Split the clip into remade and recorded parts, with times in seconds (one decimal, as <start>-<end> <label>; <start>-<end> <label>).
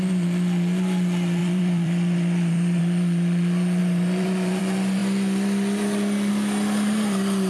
0.0-1.4 recorded; 1.4-2.8 remade; 2.8-3.8 recorded; 3.8-4.6 remade; 4.6-7.5 recorded